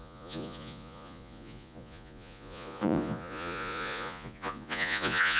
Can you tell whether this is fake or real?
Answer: fake